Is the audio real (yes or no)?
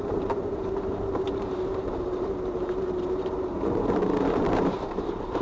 no